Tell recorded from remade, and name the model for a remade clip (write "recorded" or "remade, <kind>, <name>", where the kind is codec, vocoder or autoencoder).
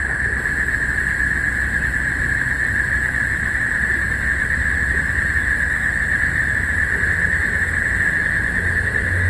recorded